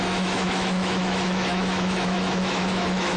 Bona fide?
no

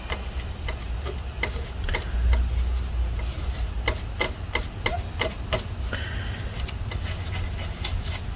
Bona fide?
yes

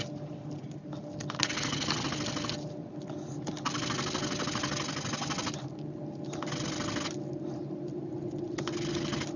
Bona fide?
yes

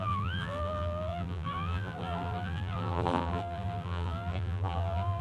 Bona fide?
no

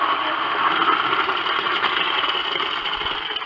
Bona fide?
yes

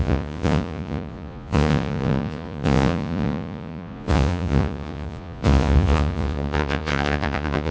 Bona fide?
no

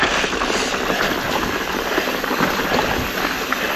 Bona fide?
yes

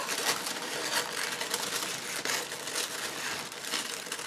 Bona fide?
yes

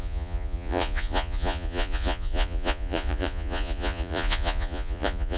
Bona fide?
no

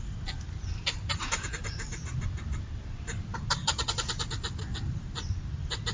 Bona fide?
yes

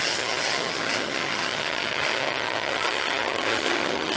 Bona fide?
no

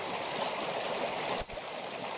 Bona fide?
yes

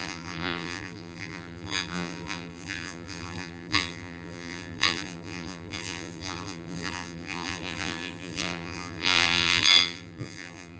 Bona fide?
no